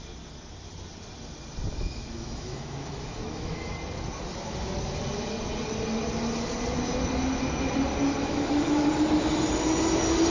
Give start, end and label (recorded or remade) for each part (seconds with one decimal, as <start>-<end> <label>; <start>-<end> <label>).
0.0-1.7 recorded; 1.7-3.7 remade; 3.7-8.2 recorded; 8.2-8.9 remade; 8.9-10.3 recorded